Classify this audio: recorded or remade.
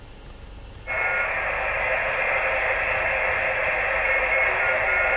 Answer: recorded